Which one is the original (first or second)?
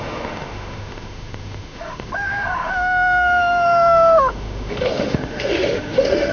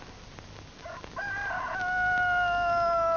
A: second